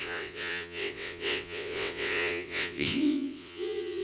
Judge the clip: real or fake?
fake